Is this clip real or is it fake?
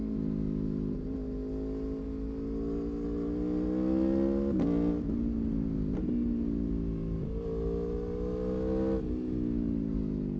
real